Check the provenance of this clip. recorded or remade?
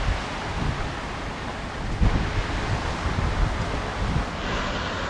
recorded